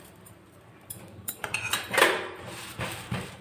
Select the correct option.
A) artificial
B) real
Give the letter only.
A